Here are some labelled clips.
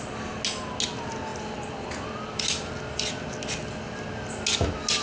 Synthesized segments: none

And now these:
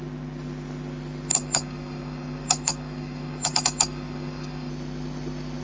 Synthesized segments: 1.3-4.7 (codec, DAC)